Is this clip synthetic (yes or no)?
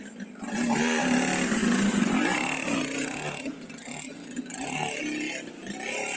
no